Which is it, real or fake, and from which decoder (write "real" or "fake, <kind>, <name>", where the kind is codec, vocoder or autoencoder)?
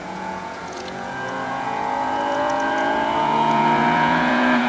fake, vocoder, Vocos